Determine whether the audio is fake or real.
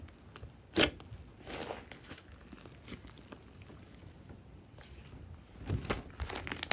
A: real